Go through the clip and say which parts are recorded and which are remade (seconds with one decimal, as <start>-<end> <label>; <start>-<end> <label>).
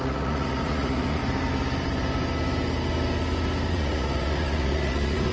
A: 0.0-1.2 remade; 1.2-3.7 recorded; 3.7-5.3 remade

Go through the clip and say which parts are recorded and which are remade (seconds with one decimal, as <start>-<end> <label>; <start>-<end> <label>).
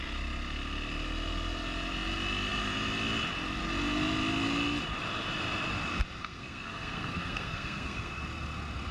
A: 0.0-6.2 recorded; 6.2-8.2 remade; 8.2-8.9 recorded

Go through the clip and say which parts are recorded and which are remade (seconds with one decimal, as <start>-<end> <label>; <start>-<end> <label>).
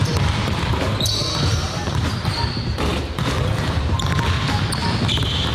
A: 0.0-0.7 remade; 0.7-1.6 recorded; 1.6-4.1 remade; 4.1-5.5 recorded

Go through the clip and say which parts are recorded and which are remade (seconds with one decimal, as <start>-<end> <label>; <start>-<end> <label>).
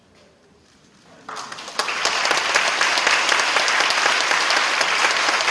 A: 0.0-5.5 recorded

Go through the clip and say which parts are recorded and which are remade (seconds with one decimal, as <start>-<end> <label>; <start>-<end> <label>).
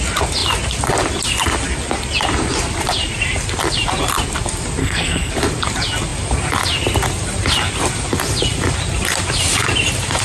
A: 0.0-4.8 recorded; 4.8-5.3 remade; 5.3-10.2 recorded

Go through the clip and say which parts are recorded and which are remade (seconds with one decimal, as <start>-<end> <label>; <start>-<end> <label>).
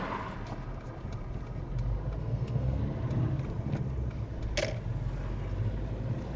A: 0.0-2.2 recorded; 2.2-2.8 remade; 2.8-6.4 recorded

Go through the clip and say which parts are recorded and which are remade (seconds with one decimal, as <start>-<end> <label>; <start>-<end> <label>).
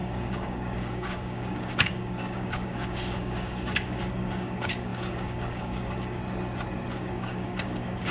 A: 0.0-6.2 remade; 6.2-6.9 recorded; 6.9-8.1 remade